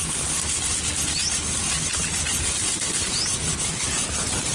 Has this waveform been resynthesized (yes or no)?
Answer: no